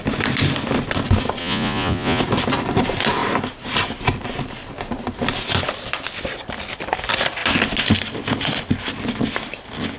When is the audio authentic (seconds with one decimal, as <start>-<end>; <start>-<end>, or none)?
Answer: 0.0-1.4; 2.2-10.0